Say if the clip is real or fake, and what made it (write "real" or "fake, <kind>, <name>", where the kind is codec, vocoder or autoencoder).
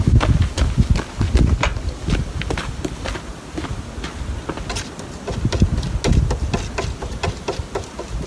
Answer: real